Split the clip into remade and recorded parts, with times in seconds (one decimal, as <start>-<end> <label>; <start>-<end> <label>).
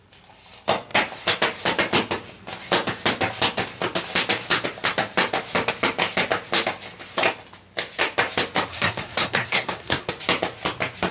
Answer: 0.0-8.7 recorded; 8.7-10.1 remade; 10.1-11.1 recorded